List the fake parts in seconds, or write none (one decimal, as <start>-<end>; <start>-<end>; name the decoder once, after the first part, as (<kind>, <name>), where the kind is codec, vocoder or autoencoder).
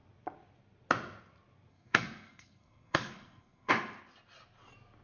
1.7-3.7 (codec, SNAC)